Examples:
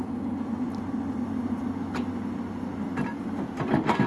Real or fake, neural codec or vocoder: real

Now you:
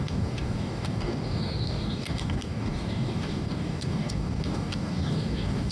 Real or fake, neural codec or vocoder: fake, codec, DAC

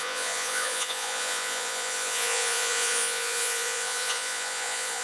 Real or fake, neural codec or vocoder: fake, vocoder, Vocos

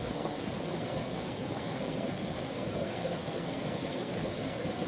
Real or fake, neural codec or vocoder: fake, codec, SNAC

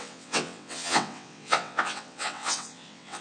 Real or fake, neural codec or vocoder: fake, vocoder, WaveNeXt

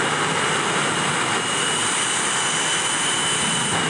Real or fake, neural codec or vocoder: real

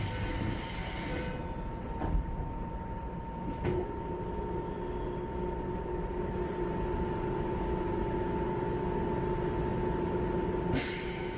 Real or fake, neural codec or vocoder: real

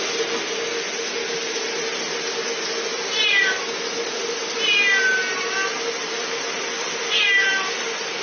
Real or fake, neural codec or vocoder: real